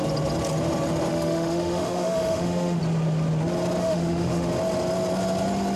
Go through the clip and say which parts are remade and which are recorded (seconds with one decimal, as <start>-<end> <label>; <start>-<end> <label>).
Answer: 0.0-1.1 recorded; 1.1-2.8 remade; 2.8-3.8 recorded; 3.8-4.5 remade; 4.5-5.8 recorded